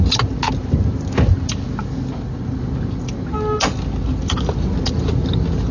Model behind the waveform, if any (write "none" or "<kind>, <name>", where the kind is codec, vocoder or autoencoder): none